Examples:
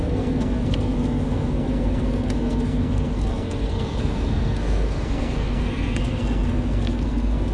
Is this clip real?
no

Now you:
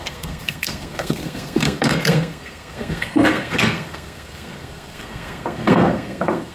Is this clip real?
no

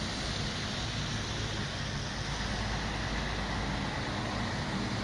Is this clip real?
yes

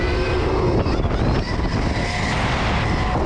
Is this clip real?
yes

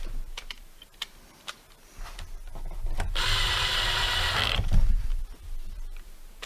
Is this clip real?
no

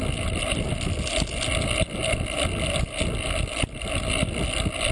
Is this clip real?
yes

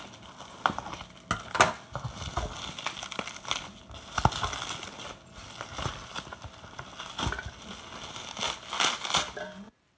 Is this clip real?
yes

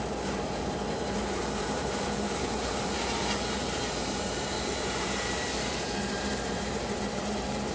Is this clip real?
no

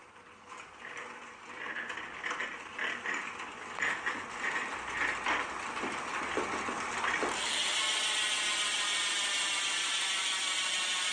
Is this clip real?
yes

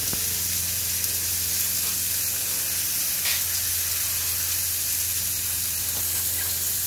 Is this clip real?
yes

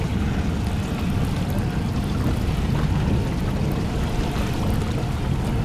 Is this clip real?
yes